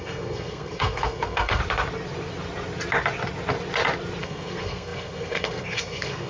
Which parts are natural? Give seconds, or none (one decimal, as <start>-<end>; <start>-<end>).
1.6-4.2